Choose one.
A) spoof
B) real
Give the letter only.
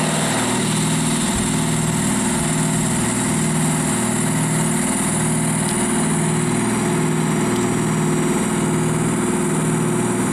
B